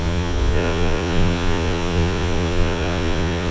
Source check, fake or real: fake